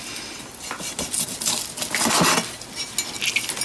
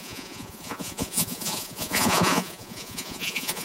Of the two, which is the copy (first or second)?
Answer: second